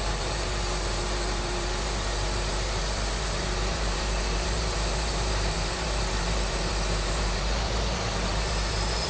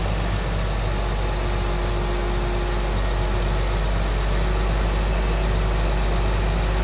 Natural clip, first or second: second